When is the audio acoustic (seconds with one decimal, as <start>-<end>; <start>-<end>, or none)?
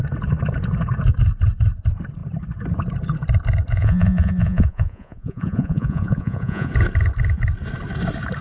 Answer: 0.0-3.7; 6.7-8.4